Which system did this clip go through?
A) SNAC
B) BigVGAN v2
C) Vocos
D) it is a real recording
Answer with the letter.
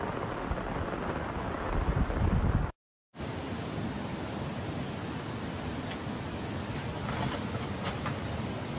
D